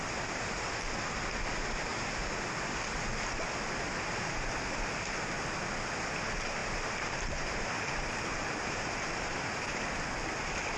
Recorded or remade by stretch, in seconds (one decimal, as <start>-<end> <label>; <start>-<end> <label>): 0.0-6.6 recorded; 6.6-9.8 remade; 9.8-10.8 recorded